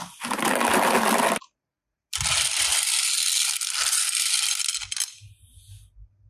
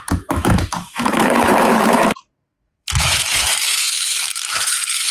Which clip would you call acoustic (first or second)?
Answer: first